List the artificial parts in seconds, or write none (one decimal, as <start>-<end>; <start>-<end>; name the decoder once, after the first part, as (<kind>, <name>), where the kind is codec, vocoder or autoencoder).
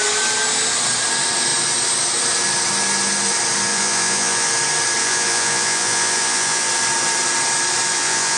3.7-4.5 (vocoder, Vocos); 5.0-6.7; 7.9-8.4